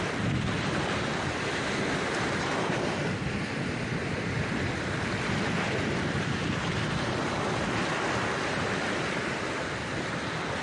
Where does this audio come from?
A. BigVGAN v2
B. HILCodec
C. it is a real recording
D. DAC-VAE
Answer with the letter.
C